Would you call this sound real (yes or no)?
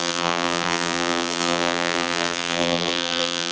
no